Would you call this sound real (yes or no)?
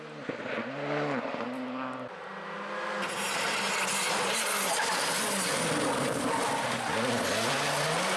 yes